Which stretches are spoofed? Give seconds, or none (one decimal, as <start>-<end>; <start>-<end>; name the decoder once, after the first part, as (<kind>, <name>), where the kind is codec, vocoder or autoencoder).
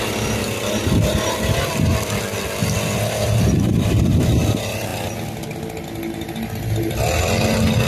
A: none